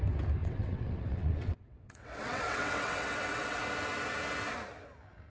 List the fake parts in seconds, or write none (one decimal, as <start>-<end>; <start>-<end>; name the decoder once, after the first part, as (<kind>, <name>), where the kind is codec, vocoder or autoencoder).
0.4-3.6 (vocoder, WaveNeXt)